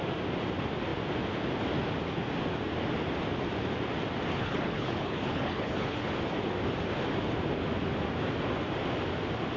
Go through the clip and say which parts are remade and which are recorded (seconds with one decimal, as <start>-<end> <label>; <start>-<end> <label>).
0.0-4.3 recorded; 4.3-6.1 remade; 6.1-9.6 recorded